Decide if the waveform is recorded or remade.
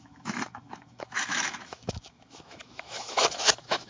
remade